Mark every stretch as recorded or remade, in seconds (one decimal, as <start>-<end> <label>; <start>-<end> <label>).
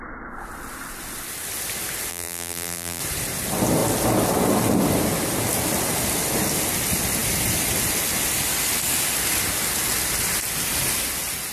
0.0-2.1 recorded; 2.1-3.0 remade; 3.0-11.5 recorded